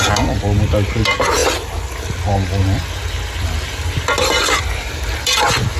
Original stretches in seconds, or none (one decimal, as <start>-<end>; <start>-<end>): 0.0-5.8

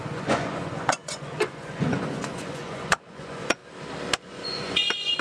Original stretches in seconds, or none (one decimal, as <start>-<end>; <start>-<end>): 3.6-4.2

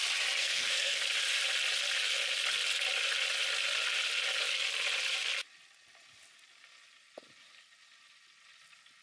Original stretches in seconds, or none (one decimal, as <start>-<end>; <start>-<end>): 0.0-0.4; 1.0-9.0

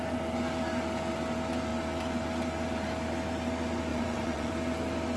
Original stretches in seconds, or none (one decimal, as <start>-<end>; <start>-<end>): 0.0-3.9; 4.5-5.2

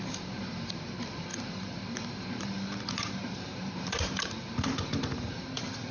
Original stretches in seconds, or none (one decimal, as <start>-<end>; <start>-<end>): none

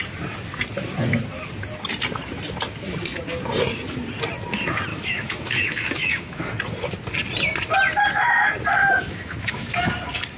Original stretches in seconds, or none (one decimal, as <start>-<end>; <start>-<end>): 0.0-4.9; 6.4-8.8; 9.8-10.4